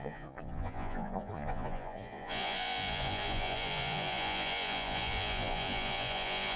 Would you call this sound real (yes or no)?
no